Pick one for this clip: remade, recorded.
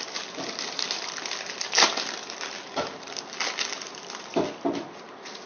recorded